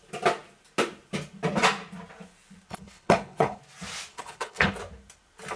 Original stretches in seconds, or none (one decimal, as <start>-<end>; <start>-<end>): 0.0-2.7; 3.6-4.1; 4.7-5.6